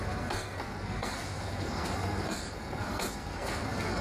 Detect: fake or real fake